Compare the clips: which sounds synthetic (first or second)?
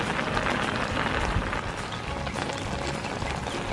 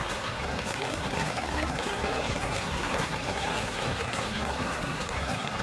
second